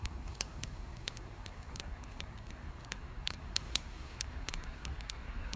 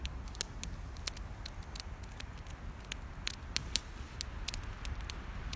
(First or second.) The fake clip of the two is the first